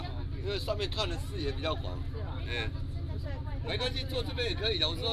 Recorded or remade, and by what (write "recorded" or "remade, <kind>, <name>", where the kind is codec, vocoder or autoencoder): recorded